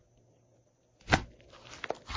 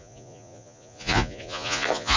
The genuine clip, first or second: first